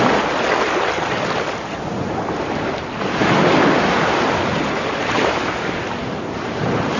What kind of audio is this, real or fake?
real